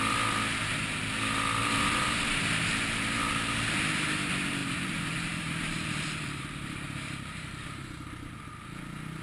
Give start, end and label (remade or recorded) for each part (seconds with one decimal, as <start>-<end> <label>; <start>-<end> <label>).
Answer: 0.0-1.6 recorded; 1.6-3.3 remade; 3.3-4.6 recorded; 4.6-8.4 remade; 8.4-9.2 recorded